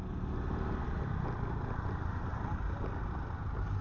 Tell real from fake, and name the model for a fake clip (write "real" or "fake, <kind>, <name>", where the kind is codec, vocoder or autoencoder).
real